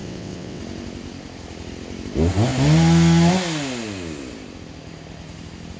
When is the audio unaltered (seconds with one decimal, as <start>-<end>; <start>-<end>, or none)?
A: 0.6-5.8